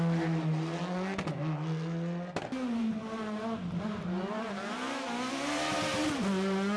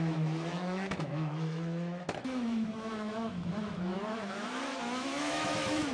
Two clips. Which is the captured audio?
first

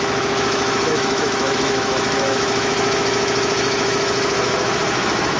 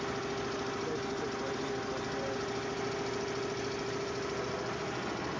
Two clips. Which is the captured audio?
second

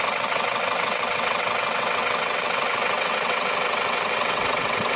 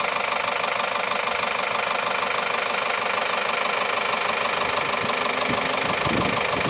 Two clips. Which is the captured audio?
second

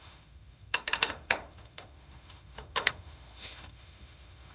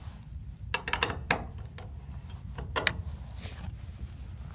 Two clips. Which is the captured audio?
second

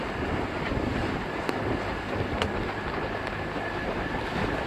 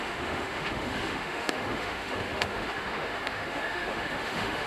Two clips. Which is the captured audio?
first